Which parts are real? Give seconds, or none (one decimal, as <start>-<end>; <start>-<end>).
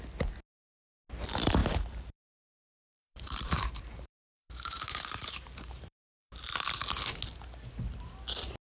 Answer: 0.0-1.6; 6.3-8.7